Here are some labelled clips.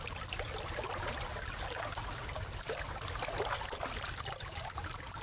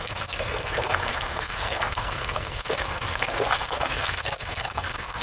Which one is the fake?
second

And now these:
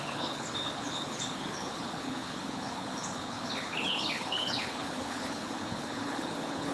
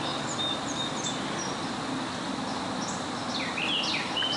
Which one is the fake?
first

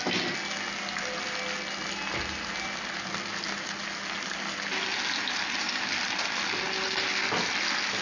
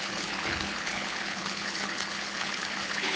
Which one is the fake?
second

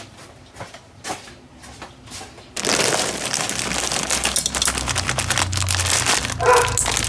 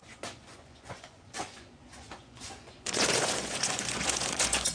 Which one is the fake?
second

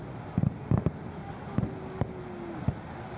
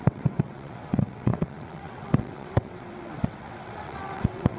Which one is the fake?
second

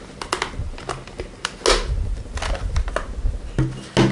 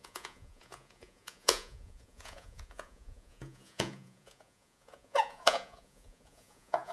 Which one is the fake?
second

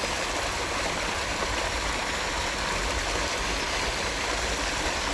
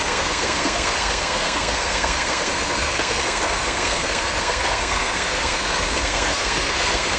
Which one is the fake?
second